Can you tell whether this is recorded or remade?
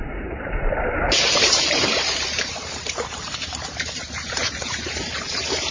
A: remade